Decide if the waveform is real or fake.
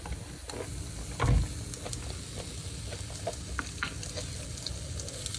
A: real